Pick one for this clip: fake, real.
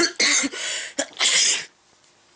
real